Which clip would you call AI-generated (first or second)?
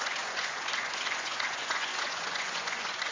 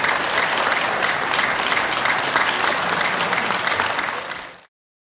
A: first